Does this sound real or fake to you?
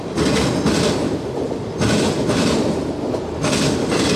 real